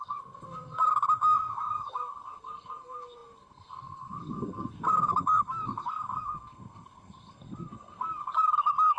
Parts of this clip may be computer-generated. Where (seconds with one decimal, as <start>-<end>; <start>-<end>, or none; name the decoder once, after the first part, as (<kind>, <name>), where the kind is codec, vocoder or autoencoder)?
0.0-9.0 (codec, SNAC)